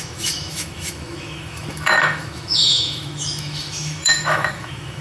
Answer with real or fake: fake